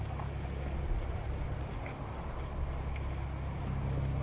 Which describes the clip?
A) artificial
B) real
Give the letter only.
B